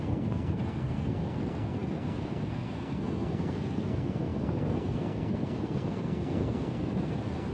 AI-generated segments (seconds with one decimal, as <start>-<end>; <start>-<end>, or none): 0.0-7.5